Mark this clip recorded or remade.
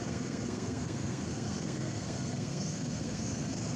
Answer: remade